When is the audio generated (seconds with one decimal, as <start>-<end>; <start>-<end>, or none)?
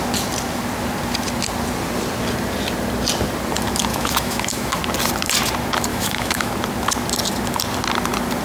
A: 3.9-4.8; 5.9-6.5